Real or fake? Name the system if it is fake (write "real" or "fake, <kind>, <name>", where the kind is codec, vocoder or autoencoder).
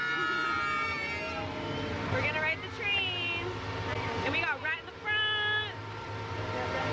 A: real